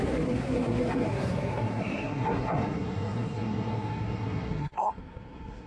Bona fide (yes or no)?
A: no